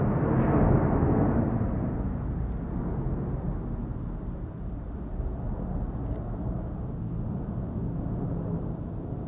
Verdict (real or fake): real